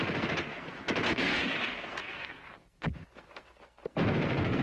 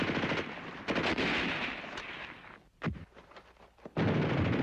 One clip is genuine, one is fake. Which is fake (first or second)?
first